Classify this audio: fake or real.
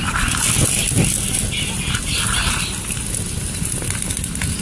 real